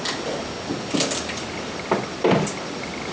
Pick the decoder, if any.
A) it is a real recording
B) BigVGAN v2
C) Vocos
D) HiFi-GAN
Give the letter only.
A